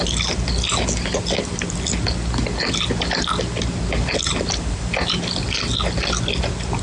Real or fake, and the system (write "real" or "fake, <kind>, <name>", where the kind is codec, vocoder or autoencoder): real